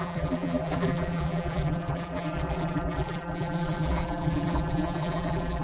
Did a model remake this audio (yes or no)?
yes